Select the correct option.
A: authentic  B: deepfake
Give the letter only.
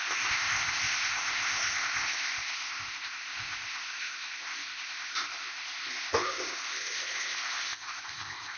B